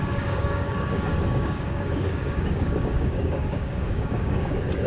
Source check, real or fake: fake